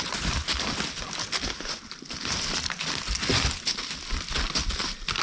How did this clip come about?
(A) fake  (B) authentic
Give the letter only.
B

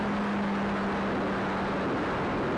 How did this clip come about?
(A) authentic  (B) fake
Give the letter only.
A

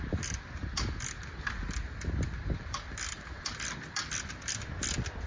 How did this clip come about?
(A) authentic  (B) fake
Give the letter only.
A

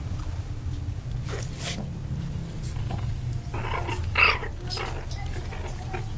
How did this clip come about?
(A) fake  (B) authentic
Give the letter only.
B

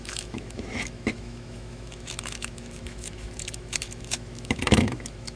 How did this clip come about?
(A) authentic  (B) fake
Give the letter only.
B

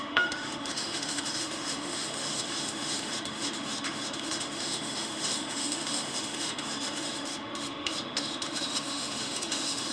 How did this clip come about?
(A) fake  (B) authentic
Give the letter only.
A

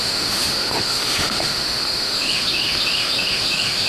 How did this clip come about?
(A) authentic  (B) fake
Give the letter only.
B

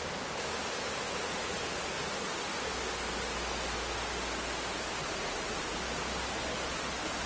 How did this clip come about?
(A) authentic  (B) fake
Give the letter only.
A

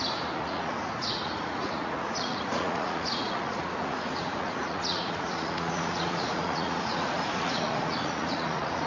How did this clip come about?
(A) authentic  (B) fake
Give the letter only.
B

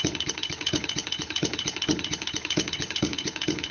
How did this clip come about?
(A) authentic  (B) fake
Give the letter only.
B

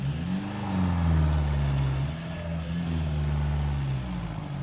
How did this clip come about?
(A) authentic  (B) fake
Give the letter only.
A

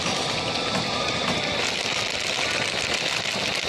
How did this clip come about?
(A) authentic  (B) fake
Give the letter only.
A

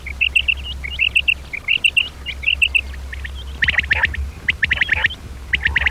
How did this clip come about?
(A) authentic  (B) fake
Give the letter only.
A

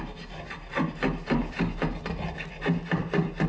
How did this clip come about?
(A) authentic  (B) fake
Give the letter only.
A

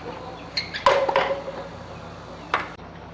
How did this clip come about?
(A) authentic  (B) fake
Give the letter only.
A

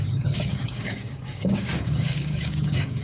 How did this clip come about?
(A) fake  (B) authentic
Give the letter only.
A